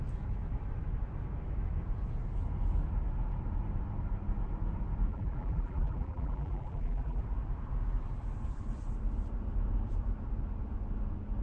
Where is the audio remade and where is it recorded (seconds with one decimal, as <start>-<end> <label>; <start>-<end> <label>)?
0.0-5.1 recorded; 5.1-7.2 remade; 7.2-11.4 recorded